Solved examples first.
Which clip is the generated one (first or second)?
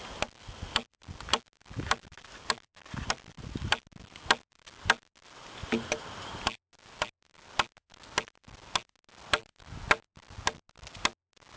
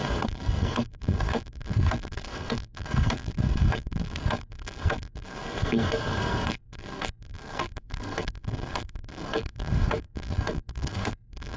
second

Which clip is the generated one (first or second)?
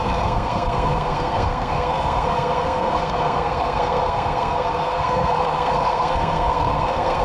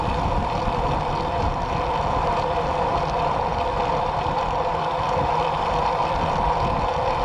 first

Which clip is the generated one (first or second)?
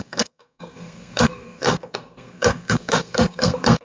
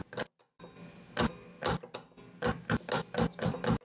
first